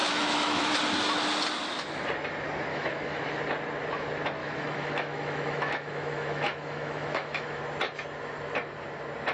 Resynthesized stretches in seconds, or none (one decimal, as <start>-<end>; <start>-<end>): 0.0-0.7; 2.7-3.2; 4.4-7.6